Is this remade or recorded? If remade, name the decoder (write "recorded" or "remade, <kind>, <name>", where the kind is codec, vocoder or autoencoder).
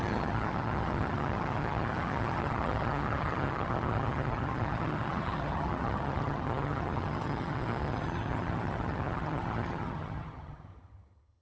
remade, vocoder, HiFi-GAN